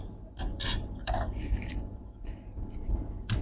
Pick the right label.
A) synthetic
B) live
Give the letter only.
A